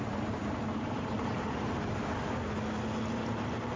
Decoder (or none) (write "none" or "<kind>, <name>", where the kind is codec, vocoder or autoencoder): none